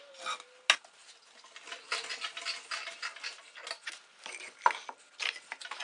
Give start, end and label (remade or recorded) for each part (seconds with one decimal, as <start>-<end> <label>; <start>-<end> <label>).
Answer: 0.0-5.8 recorded